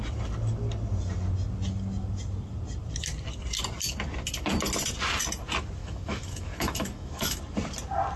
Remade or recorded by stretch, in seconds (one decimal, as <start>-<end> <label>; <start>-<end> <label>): 0.0-5.8 recorded; 5.8-7.4 remade; 7.4-8.2 recorded